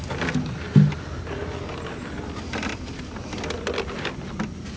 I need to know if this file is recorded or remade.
recorded